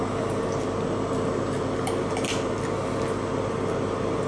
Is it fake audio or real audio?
real